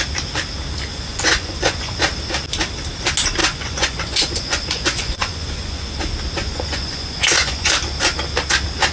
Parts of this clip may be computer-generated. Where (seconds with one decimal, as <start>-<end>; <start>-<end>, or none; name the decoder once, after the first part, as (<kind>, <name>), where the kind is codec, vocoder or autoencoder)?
0.9-2.0 (vocoder, Vocos); 3.4-5.9; 6.4-7.7